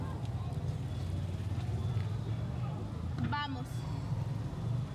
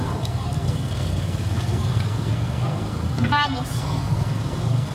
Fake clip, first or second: second